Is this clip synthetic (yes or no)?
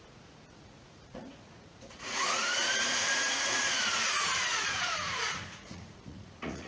yes